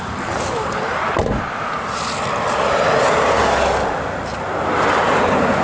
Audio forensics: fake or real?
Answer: real